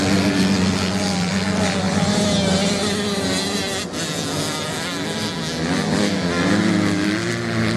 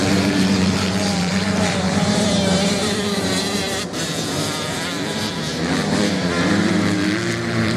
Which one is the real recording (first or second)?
first